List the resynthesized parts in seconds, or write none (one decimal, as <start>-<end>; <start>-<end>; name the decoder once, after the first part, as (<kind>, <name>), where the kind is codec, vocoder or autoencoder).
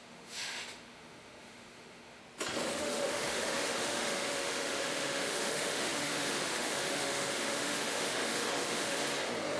0.0-2.2 (autoencoder, DAC-VAE); 2.8-9.0